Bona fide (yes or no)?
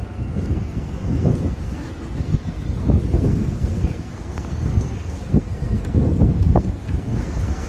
no